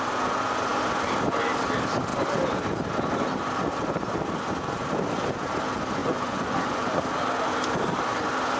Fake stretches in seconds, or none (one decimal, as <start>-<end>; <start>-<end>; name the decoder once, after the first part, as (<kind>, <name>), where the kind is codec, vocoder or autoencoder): 6.0-7.0 (vocoder, Vocos)